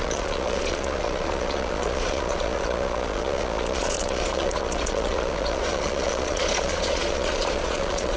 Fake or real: fake